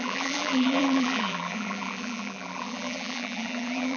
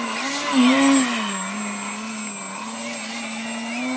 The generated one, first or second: first